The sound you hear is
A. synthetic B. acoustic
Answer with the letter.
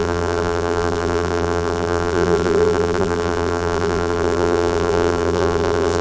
A